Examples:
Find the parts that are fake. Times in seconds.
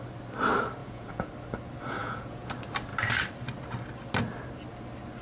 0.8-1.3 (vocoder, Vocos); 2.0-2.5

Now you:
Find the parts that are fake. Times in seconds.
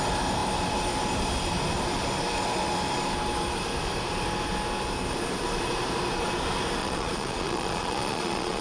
6.8-8.6 (vocoder, Vocos)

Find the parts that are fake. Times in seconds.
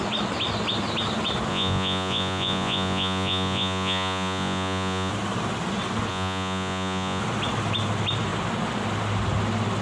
1.5-5.1 (vocoder, Vocos); 6.1-7.2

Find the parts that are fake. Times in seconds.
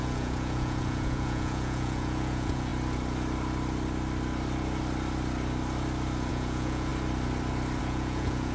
0.0-2.7 (vocoder, Vocos); 6.3-6.9; 7.8-8.5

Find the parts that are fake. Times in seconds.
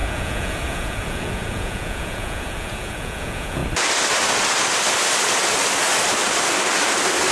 0.0-3.6 (vocoder, Vocos)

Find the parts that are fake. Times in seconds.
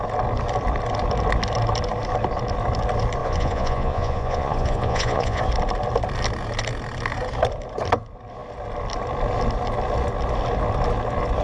3.2-5.4 (vocoder, Vocos)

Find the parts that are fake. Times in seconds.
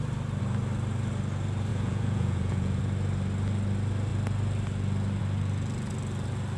1.7-2.8 (vocoder, Vocos)